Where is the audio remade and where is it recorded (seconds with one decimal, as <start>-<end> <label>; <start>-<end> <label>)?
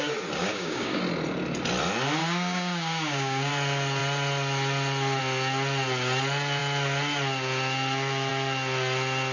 0.0-0.4 recorded; 0.4-1.0 remade; 1.0-2.2 recorded; 2.2-3.5 remade; 3.5-9.3 recorded